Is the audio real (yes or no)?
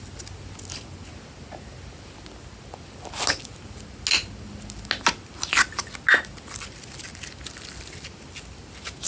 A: yes